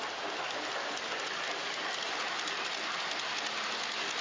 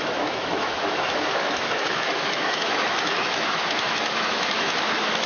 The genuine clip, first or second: first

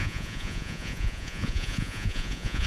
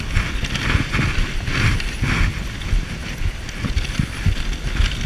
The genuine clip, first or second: second